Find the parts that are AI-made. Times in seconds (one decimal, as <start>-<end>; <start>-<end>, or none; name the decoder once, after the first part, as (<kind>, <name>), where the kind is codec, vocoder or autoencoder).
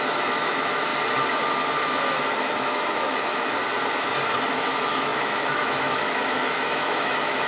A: 0.0-0.9 (autoencoder, DAC-VAE); 2.4-3.6; 4.5-7.5